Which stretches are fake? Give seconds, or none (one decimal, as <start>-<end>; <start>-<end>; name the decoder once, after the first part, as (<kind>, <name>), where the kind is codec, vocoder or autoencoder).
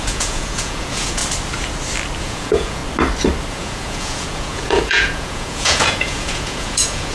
0.0-1.2 (vocoder, Vocos); 2.2-2.8; 3.5-7.1